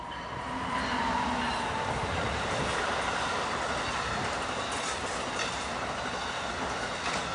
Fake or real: real